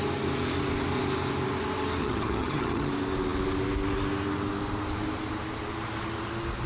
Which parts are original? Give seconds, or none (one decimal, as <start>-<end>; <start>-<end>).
0.0-2.0; 2.9-6.7